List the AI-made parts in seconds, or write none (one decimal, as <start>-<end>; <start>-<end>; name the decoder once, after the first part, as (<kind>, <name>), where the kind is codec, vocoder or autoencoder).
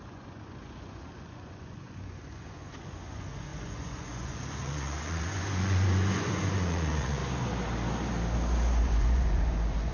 0.0-7.2 (vocoder, Vocos); 8.8-9.9